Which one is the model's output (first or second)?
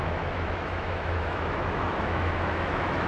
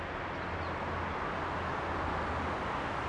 first